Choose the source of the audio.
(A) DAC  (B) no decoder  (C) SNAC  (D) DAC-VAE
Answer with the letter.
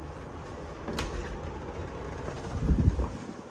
B